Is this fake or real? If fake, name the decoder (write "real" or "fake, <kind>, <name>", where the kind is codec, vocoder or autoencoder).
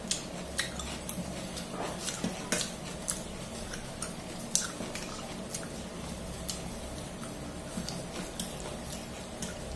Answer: real